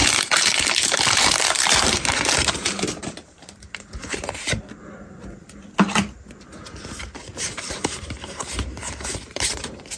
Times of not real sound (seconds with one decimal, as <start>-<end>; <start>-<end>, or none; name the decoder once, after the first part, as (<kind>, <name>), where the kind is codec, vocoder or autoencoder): 0.0-4.8 (vocoder, BigVGAN v2); 7.3-10.0